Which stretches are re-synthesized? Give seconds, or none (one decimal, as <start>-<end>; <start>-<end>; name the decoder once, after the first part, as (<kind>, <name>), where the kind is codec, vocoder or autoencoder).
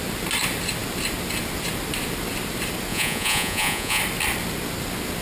2.9-4.0 (vocoder, Vocos)